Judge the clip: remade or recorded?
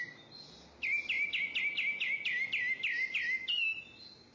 recorded